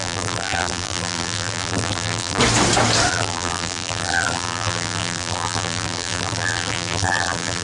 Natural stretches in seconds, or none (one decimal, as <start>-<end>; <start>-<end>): 2.4-3.1